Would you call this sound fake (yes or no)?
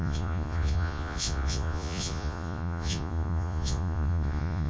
yes